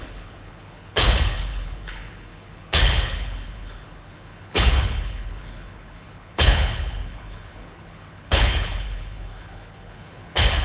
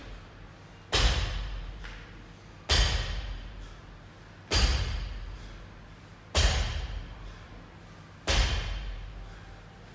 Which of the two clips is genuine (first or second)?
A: second